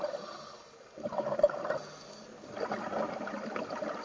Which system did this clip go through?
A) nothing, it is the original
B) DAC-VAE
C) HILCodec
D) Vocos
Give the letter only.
A